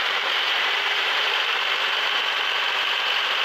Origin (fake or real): fake